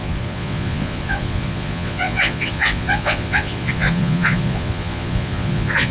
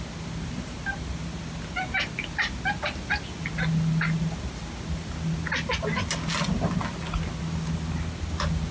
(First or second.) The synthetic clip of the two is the first